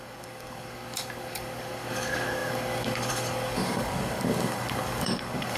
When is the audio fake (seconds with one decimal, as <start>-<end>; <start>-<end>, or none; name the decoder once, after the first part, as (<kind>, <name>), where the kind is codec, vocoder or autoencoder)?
0.0-5.6 (codec, DAC)